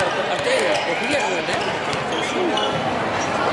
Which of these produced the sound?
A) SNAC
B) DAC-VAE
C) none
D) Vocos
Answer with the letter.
C